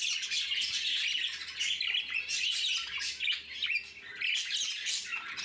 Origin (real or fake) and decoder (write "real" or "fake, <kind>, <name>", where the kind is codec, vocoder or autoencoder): real